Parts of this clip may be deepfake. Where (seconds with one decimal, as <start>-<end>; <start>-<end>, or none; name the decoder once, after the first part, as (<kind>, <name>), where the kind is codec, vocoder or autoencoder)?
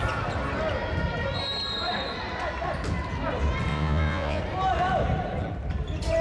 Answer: 3.7-4.4 (vocoder, Vocos)